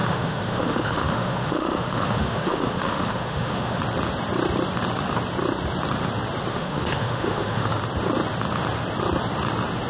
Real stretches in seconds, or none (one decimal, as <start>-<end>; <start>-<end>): 3.8-6.5; 7.8-9.9